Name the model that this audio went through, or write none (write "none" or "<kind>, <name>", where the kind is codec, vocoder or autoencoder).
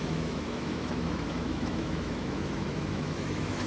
autoencoder, DAC-VAE